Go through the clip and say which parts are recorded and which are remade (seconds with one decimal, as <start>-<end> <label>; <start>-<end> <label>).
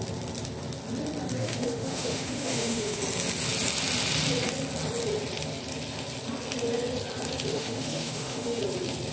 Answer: 0.0-1.4 recorded; 1.4-3.0 remade; 3.0-7.5 recorded; 7.5-8.6 remade; 8.6-9.1 recorded